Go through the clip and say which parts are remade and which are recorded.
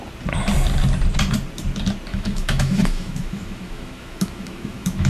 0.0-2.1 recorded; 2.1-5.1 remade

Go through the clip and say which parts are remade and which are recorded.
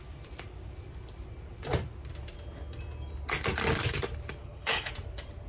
0.0-4.4 recorded; 4.4-4.9 remade; 4.9-5.5 recorded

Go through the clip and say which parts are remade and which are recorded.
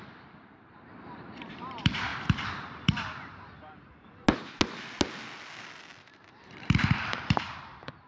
0.0-2.1 remade; 2.1-6.0 recorded; 6.0-8.1 remade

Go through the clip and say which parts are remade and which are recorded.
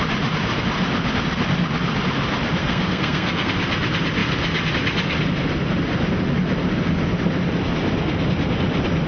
0.0-2.6 recorded; 2.6-3.5 remade; 3.5-9.1 recorded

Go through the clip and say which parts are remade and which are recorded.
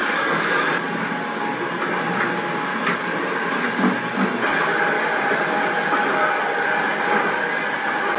0.0-0.6 remade; 0.6-8.2 recorded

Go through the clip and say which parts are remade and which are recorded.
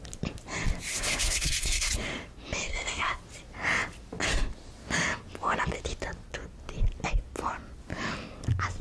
0.0-0.9 recorded; 0.9-1.9 remade; 1.9-2.7 recorded; 2.7-3.2 remade; 3.2-8.8 recorded